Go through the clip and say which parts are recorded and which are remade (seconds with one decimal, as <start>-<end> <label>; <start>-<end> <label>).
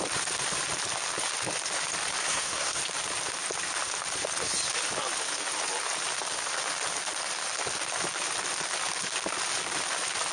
0.0-2.2 recorded; 2.2-2.8 remade; 2.8-10.3 recorded